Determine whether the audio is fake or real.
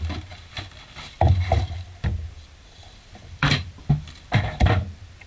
real